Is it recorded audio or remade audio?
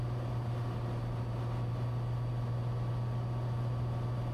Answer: recorded